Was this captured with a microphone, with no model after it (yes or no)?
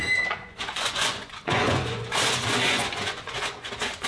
no